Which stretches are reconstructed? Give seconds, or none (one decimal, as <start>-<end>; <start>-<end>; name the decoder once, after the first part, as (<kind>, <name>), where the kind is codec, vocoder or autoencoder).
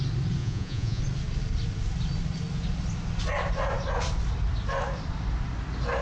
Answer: 0.4-1.0 (vocoder, Vocos)